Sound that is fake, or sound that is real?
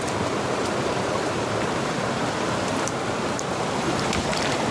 fake